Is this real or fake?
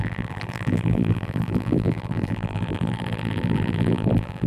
fake